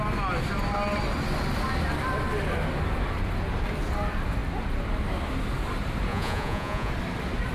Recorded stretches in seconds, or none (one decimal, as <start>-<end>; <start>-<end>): 0.0-6.1; 6.9-7.5